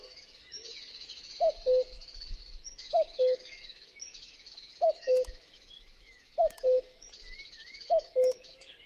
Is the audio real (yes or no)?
no